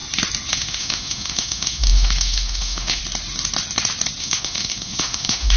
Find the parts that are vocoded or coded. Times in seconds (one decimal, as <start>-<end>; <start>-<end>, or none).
0.5-3.0; 4.2-5.6